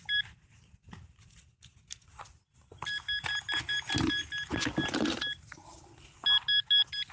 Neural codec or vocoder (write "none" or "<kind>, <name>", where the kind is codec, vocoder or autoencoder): none